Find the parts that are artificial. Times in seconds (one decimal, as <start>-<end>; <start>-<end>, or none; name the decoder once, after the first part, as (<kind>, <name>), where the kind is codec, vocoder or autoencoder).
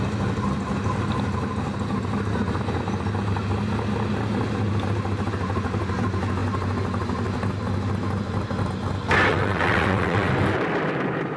9.3-10.3 (vocoder, WaveNeXt)